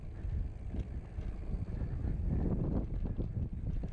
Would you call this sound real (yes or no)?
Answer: yes